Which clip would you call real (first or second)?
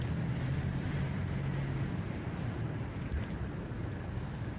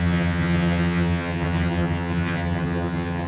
first